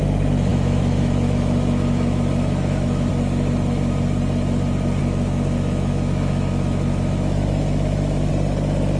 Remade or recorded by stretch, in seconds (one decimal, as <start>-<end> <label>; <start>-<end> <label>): 0.0-0.5 recorded; 0.5-3.1 remade; 3.1-5.0 recorded; 5.0-8.3 remade; 8.3-9.0 recorded